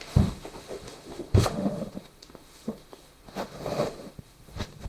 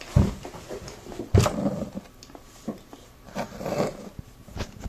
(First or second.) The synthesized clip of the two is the first